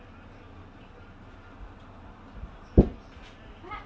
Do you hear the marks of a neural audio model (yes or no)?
no